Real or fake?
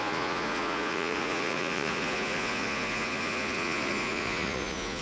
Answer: fake